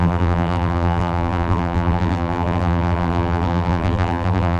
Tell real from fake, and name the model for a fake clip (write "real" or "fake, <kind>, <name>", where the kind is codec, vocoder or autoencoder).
fake, vocoder, BigVGAN v2